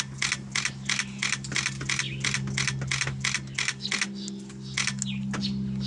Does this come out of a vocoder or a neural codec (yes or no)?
no